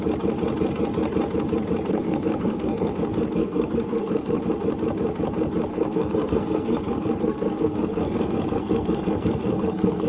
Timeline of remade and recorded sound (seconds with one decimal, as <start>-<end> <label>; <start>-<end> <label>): 0.0-1.9 recorded; 1.9-2.9 remade; 2.9-3.4 recorded; 3.4-4.4 remade; 4.4-5.7 recorded; 5.7-10.1 remade